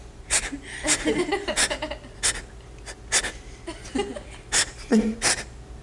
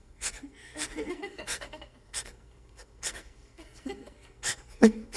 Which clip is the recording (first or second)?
first